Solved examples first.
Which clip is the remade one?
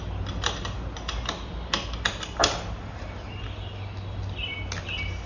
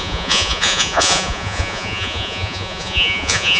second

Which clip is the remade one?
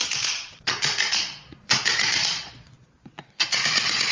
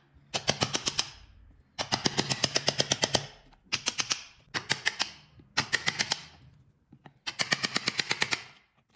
first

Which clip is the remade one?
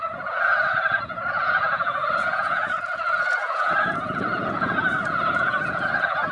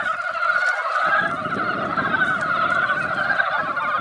first